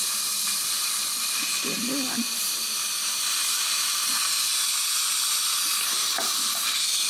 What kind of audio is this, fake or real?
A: real